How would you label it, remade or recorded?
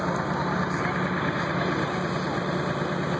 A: recorded